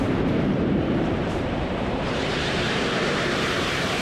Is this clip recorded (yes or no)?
no